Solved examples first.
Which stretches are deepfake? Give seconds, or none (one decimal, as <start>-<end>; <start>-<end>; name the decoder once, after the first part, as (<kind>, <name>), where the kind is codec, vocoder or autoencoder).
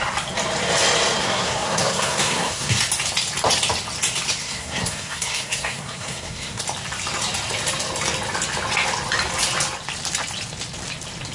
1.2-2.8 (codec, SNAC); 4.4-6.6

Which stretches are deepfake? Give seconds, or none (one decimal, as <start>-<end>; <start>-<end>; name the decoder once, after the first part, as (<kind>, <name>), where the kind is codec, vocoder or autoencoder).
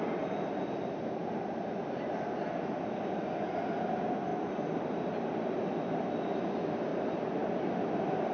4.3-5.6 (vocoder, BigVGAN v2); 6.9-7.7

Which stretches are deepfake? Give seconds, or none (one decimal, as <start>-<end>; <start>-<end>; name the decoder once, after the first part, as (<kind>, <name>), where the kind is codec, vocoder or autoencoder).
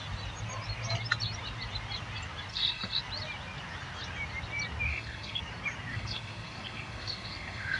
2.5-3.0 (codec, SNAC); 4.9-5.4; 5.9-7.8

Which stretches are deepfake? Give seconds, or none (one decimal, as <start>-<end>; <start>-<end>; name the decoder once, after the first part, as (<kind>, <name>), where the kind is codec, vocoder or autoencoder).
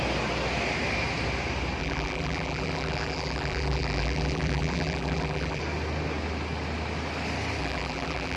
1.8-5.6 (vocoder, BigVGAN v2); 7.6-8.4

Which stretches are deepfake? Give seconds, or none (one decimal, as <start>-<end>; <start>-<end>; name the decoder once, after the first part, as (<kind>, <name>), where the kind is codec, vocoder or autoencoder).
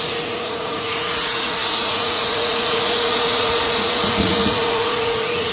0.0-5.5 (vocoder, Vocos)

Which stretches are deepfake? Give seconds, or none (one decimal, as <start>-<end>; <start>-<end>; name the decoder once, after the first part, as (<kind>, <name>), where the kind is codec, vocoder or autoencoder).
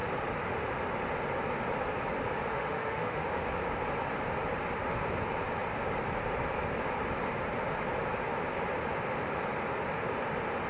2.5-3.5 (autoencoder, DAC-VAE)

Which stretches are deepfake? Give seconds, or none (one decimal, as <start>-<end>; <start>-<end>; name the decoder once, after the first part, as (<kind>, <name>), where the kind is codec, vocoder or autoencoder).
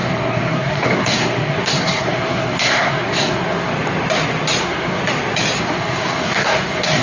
0.0-3.7 (codec, SNAC); 4.6-5.0; 5.6-7.0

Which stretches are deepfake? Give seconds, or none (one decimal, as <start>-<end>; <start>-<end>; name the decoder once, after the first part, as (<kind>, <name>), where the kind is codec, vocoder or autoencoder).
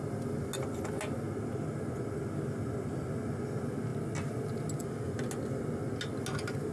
none